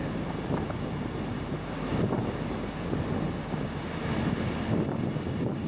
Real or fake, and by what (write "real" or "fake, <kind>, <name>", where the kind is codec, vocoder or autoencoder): real